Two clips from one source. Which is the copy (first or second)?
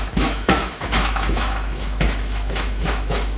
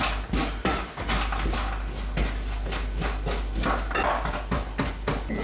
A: first